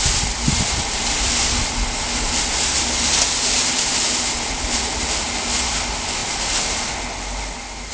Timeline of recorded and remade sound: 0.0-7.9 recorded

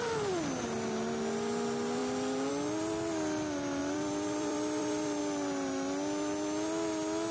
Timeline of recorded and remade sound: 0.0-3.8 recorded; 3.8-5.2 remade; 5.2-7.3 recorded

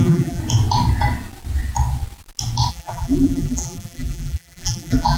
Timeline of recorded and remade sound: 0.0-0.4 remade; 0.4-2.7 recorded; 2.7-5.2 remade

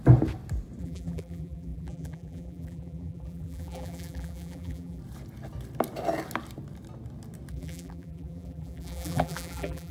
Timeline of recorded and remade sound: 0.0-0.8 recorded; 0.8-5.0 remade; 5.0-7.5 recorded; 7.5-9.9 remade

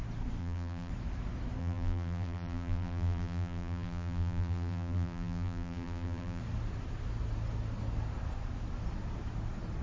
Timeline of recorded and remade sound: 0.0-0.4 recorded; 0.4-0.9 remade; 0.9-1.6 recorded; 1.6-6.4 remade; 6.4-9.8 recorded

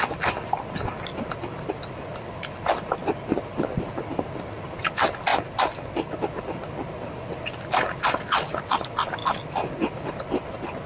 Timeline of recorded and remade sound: 0.0-10.9 recorded

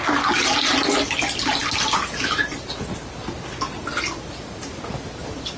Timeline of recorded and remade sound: 0.0-5.6 recorded